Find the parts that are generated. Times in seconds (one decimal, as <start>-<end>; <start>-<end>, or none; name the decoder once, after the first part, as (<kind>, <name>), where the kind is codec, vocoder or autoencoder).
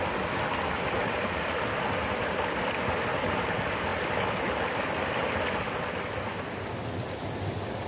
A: none